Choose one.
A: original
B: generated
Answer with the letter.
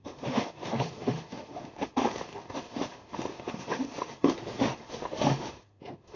B